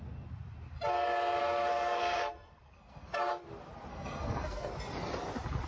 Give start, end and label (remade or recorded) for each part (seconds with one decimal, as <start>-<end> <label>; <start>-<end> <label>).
0.0-1.4 recorded; 1.4-3.3 remade; 3.3-3.9 recorded; 3.9-4.7 remade; 4.7-5.7 recorded